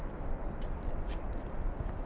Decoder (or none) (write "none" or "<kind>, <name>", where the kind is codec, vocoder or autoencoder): none